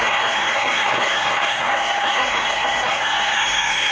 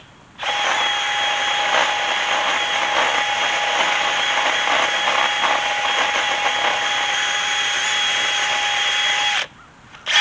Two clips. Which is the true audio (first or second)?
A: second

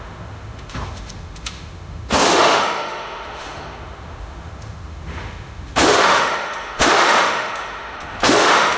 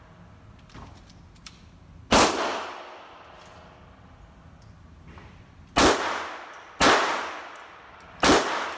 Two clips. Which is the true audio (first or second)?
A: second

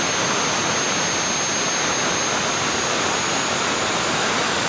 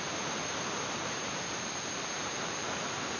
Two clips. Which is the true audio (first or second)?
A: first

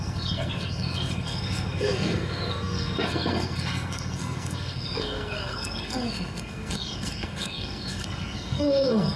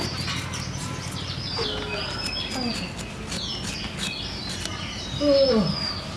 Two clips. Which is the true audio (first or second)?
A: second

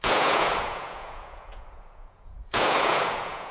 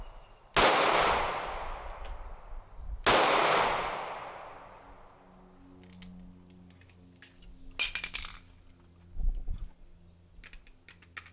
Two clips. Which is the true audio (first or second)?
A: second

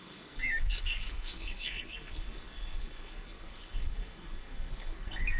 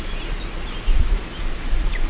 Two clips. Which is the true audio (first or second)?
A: second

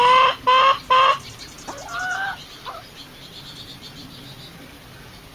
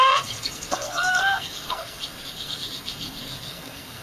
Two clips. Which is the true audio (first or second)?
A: first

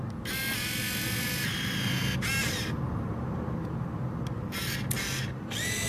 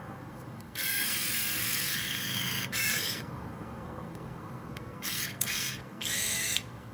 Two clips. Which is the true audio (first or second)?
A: first